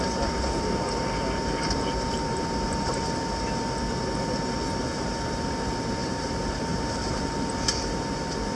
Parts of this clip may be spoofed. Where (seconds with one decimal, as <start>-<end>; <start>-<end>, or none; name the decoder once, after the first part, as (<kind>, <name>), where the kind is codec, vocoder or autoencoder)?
6.0-7.2 (vocoder, BigVGAN v2)